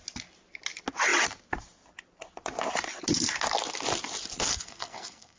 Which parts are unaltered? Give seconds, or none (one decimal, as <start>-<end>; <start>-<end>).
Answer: 0.0-4.5